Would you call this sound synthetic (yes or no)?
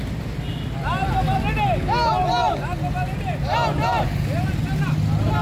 no